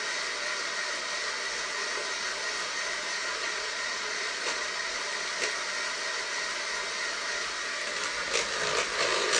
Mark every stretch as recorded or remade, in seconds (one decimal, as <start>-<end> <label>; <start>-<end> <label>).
0.0-3.2 recorded; 3.2-5.0 remade; 5.0-9.4 recorded